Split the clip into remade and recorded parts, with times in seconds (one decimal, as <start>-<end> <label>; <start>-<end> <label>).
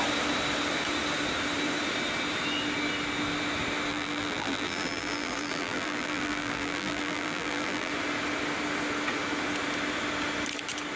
0.0-3.9 recorded; 3.9-7.9 remade; 7.9-11.0 recorded